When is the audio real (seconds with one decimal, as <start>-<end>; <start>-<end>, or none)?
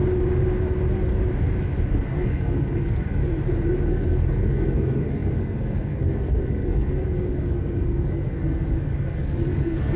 0.0-1.9; 3.2-3.9